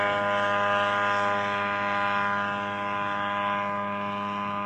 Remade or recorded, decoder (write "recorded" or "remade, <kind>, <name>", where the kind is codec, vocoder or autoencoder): recorded